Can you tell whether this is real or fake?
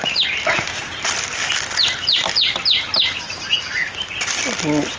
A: real